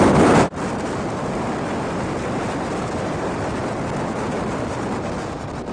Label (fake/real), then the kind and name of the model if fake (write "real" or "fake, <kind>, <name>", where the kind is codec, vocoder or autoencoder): fake, vocoder, BigVGAN v2